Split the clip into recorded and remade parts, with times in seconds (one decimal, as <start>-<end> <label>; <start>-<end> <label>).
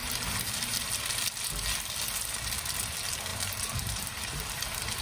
0.0-1.2 remade; 1.2-3.3 recorded; 3.3-4.6 remade; 4.6-5.0 recorded